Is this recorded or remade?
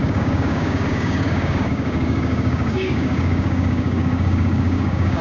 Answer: remade